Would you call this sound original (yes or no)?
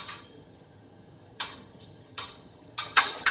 no